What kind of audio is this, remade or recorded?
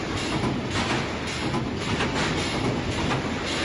recorded